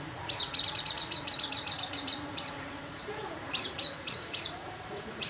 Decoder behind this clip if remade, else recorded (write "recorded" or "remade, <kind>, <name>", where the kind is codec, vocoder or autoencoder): remade, vocoder, Vocos